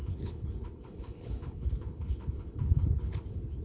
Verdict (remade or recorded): remade